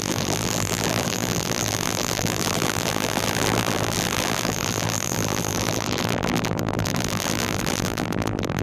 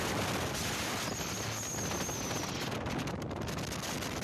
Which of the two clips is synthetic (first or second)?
first